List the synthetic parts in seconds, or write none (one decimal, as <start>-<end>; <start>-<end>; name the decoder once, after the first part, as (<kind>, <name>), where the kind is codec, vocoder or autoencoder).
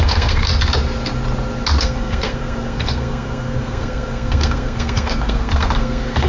0.0-0.5 (codec, SNAC); 1.8-6.3